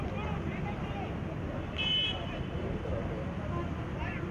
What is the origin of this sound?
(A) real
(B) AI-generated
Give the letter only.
A